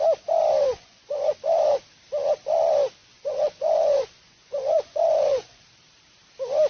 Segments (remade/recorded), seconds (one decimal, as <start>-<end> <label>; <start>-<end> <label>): 0.0-0.7 recorded; 0.7-1.4 remade; 1.4-3.0 recorded; 3.0-5.6 remade; 5.6-6.7 recorded